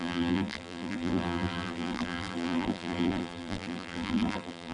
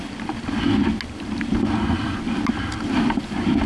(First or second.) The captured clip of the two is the second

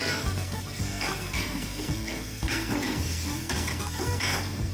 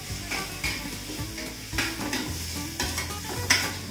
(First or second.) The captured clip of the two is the second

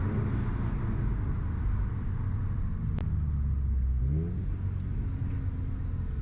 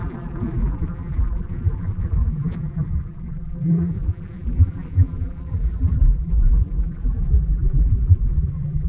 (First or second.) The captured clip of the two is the first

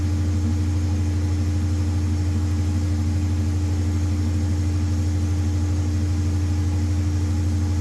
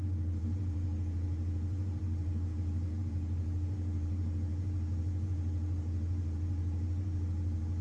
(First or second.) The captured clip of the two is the first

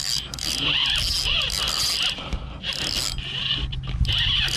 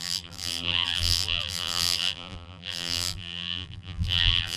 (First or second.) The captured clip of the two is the first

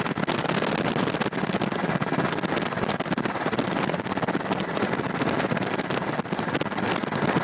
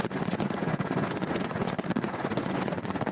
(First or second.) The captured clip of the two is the first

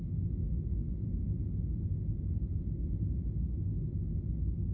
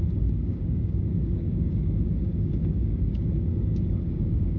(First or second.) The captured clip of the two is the first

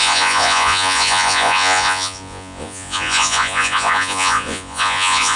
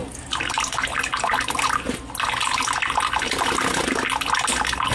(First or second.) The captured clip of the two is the second